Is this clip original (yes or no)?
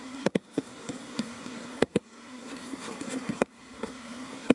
no